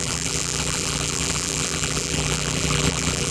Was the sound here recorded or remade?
remade